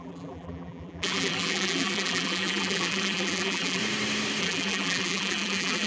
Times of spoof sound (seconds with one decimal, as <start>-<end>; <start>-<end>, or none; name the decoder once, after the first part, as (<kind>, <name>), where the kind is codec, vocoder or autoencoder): 0.0-3.8 (vocoder, BigVGAN v2); 4.4-5.9